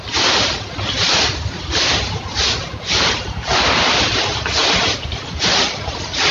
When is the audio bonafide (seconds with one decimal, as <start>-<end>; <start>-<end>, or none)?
0.0-6.3